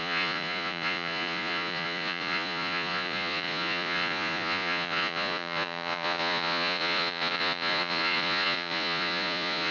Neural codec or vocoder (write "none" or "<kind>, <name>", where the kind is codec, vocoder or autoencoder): vocoder, Vocos